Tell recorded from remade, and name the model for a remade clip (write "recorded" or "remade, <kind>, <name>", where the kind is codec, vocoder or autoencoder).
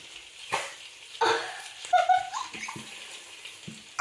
recorded